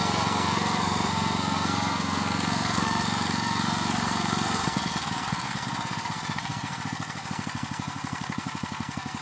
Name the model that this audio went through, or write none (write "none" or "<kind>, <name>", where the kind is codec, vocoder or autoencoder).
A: codec, SNAC